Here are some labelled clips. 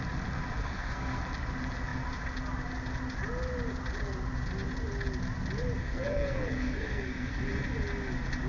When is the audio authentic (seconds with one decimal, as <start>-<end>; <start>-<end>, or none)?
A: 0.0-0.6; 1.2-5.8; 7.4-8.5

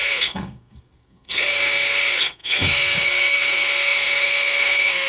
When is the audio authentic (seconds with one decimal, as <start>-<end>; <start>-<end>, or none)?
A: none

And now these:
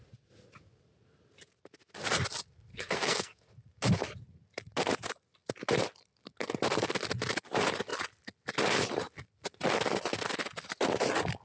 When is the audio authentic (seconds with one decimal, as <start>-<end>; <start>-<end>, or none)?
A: 0.0-2.7; 3.5-11.4

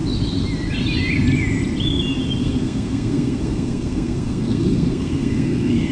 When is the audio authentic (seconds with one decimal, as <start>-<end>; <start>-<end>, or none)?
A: 0.0-2.4

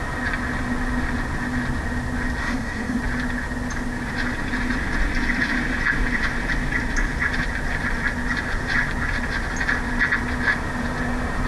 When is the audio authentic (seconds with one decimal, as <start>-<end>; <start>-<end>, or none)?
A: 0.0-2.4; 3.0-11.5